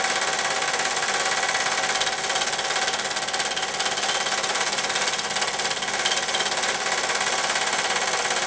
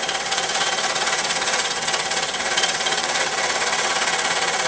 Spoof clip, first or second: second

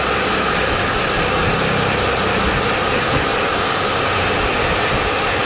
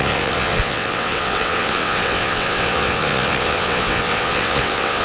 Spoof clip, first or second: second